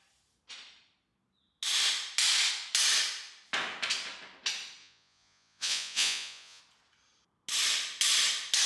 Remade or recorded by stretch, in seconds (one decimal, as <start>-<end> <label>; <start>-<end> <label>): 0.0-4.8 recorded; 4.8-6.6 remade; 6.6-8.7 recorded